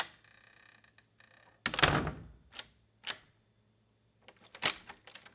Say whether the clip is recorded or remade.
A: recorded